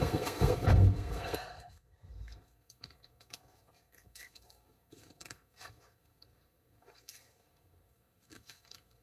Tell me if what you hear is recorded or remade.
remade